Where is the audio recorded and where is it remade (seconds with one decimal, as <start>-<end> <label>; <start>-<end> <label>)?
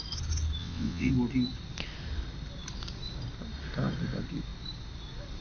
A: 0.0-0.6 recorded; 0.6-1.1 remade; 1.1-5.4 recorded